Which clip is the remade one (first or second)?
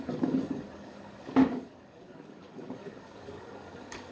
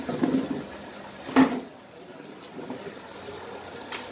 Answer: first